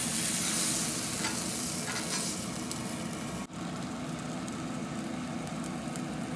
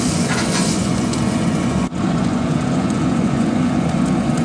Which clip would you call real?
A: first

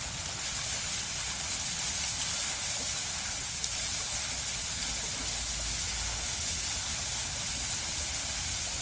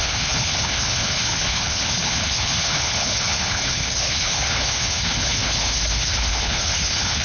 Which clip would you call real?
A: first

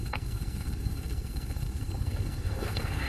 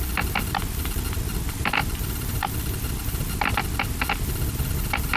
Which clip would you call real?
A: second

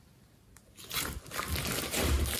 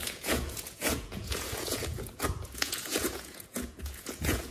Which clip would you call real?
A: first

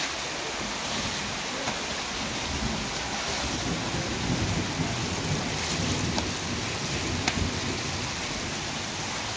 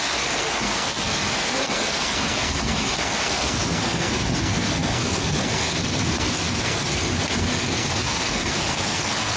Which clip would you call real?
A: first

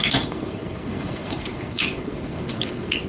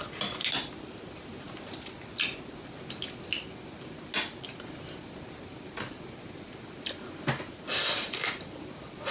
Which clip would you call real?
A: second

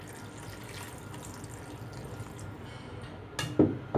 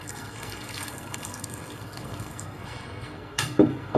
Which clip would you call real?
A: first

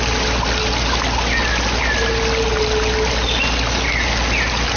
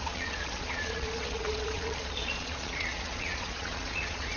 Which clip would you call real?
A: first